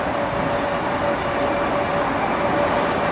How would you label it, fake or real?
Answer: real